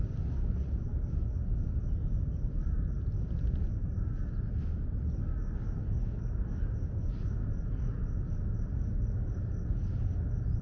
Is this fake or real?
real